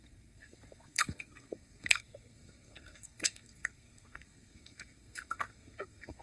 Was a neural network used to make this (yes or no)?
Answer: yes